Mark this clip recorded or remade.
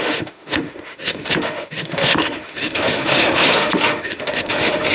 remade